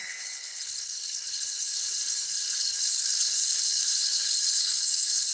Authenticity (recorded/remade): remade